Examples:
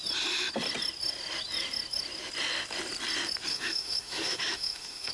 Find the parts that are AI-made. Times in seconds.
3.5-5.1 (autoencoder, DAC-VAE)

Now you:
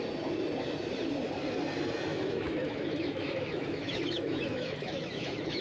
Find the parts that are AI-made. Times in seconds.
2.1-5.6 (autoencoder, DAC-VAE)

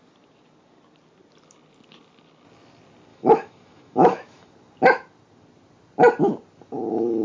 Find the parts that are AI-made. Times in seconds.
3.1-4.5 (autoencoder, DAC-VAE)

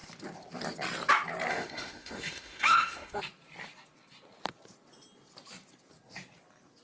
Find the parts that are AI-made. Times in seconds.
1.5-3.2 (autoencoder, DAC-VAE)

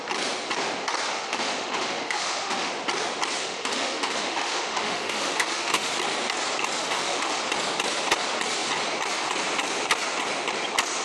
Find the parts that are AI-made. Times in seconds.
1.1-2.7 (autoencoder, DAC-VAE); 3.4-5.9; 6.8-7.4

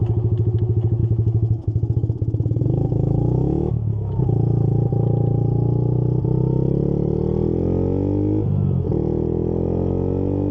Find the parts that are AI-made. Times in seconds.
1.0-4.2 (autoencoder, DAC-VAE)